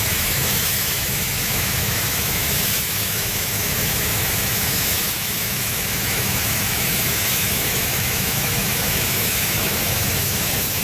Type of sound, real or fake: fake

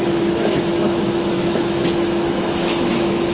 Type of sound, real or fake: fake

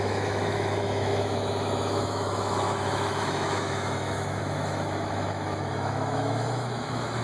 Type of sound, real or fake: fake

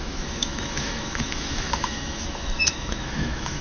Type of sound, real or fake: fake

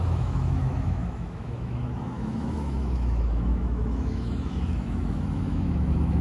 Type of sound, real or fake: fake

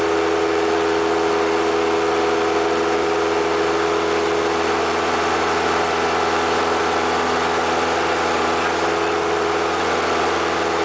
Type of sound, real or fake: real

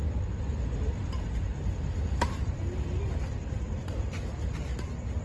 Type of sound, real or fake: real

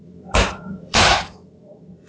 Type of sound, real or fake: fake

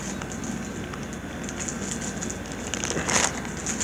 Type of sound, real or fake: real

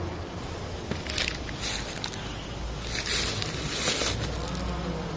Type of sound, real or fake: real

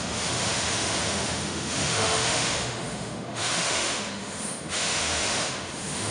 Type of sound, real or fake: fake